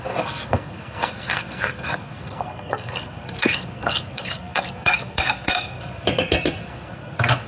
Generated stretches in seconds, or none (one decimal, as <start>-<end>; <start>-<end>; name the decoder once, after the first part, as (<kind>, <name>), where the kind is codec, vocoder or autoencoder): 0.0-7.5 (codec, SNAC)